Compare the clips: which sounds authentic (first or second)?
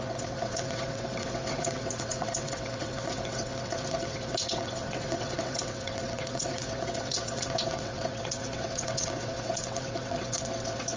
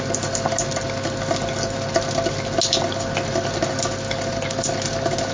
second